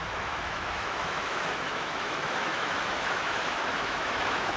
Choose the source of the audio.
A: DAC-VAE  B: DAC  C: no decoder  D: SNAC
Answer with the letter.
A